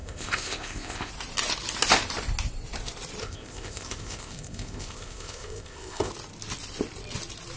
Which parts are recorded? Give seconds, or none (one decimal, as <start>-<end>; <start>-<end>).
1.1-3.2; 6.1-7.6